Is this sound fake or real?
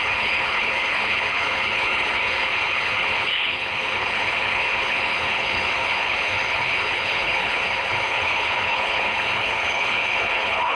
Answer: fake